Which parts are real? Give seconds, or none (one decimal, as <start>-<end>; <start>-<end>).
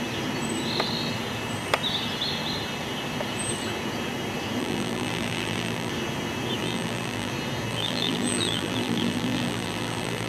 0.0-4.6; 5.9-6.6; 7.3-7.7